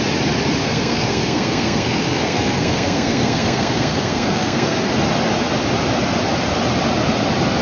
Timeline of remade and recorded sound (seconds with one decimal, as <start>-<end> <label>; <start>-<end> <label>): 0.0-0.6 recorded; 0.6-4.9 remade; 4.9-7.6 recorded